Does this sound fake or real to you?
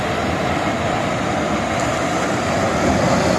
real